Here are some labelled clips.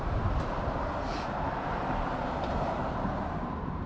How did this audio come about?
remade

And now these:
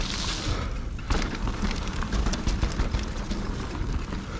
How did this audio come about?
recorded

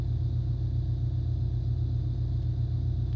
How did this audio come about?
recorded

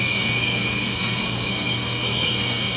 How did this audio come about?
remade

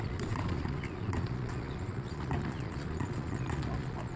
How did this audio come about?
remade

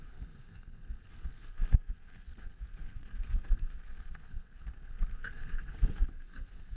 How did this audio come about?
remade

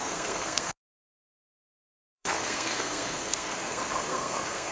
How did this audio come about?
remade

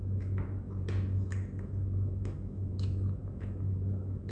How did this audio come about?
remade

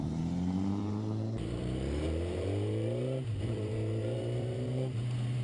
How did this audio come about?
remade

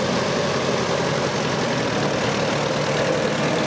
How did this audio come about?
recorded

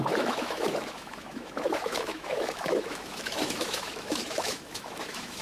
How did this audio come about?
remade